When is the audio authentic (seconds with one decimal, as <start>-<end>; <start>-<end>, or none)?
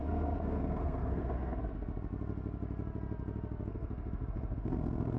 1.6-3.7